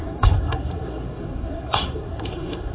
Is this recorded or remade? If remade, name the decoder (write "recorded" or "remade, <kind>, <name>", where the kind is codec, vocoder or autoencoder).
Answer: remade, codec, SNAC